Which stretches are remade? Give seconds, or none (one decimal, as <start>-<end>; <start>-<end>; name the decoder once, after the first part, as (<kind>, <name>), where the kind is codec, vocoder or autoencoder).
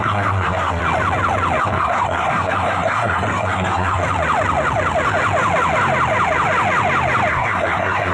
0.0-0.8 (codec, SNAC); 1.6-4.0; 7.3-8.1